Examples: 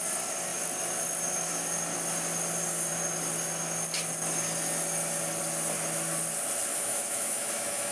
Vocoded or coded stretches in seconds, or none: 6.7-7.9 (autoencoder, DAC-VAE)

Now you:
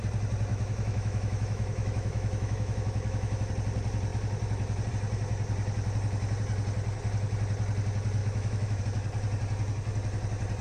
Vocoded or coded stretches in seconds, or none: 0.5-3.5 (autoencoder, DAC-VAE); 8.2-8.8

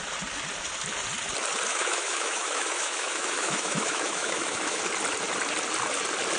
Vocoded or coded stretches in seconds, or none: 1.7-4.8 (autoencoder, DAC-VAE)

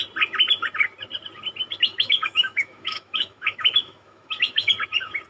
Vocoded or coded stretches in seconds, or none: 1.9-4.7 (autoencoder, DAC-VAE)